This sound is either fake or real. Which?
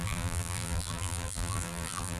fake